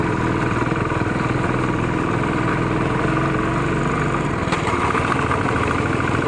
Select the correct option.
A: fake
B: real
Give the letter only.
B